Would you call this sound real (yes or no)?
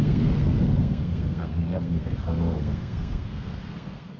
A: no